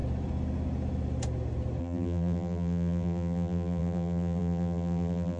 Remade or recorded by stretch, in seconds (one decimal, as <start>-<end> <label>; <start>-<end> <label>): 0.0-1.8 recorded; 1.8-5.4 remade